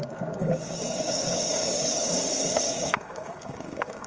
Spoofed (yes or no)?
yes